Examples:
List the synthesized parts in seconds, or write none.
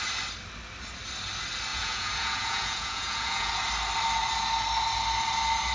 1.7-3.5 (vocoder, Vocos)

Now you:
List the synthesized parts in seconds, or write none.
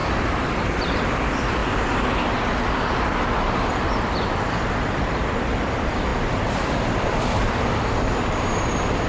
1.0-1.6 (vocoder, BigVGAN v2); 5.6-9.1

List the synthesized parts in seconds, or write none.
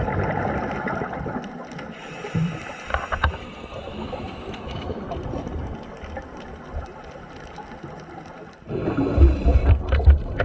3.9-5.0 (autoencoder, DAC-VAE)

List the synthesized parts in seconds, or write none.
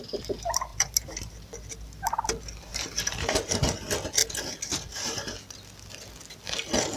0.7-1.3 (vocoder, BigVGAN v2); 2.7-3.6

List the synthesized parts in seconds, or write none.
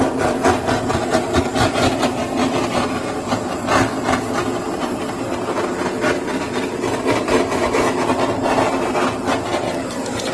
none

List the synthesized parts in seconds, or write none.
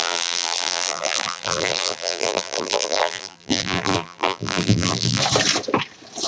0.0-5.2 (vocoder, BigVGAN v2)